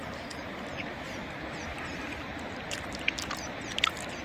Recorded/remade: remade